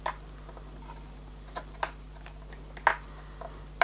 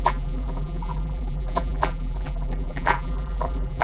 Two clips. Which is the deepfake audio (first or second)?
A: second